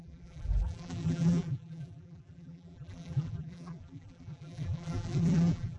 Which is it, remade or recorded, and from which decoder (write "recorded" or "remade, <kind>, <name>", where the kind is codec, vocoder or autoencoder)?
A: remade, vocoder, BigVGAN v2